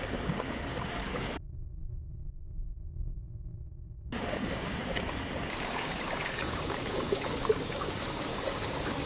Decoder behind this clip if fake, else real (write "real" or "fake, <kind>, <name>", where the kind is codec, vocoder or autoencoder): fake, codec, DAC